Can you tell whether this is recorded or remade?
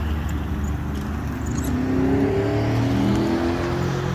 recorded